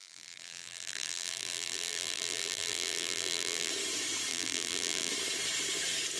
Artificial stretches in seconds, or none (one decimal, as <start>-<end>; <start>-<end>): 0.0-3.7; 4.3-5.1